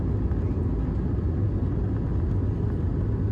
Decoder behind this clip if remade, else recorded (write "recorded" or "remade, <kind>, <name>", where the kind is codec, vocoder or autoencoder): recorded